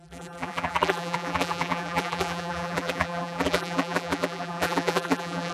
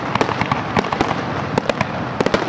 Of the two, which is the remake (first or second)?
first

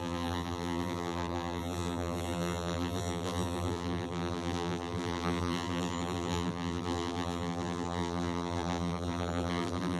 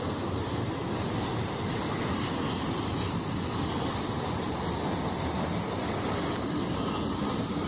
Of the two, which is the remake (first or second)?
first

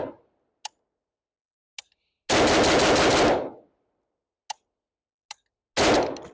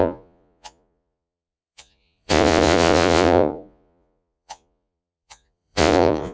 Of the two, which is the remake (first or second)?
second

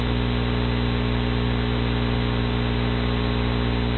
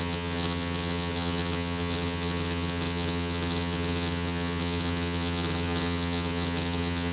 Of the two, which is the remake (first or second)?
second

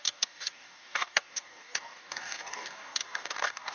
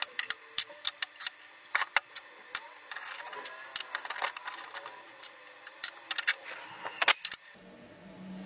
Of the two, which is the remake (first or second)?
first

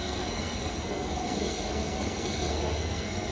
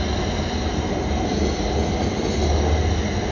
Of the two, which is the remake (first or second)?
first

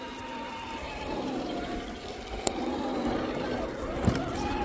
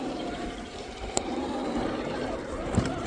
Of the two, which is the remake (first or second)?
second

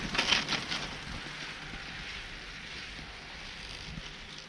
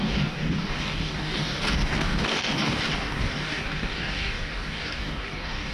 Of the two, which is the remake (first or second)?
second